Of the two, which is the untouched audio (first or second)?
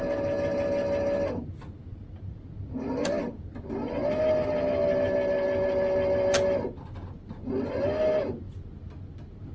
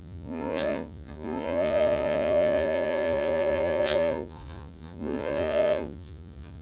first